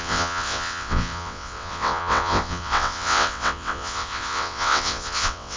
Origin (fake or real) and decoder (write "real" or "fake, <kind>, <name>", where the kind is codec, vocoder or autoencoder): fake, vocoder, WaveNeXt